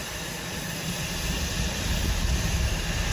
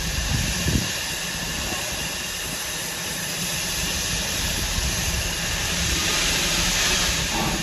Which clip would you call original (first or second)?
first